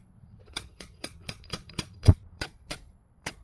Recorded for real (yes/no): no